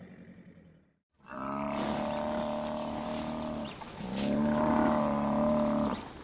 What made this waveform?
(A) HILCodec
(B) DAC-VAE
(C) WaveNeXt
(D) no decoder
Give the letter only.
D